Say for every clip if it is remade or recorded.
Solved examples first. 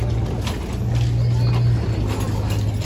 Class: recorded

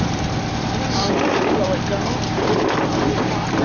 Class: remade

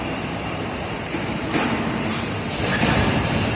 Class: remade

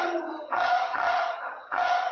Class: remade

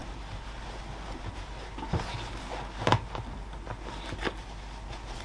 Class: recorded